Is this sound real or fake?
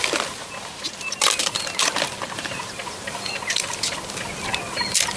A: real